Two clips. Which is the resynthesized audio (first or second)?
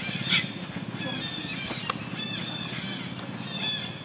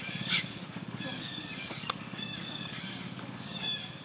second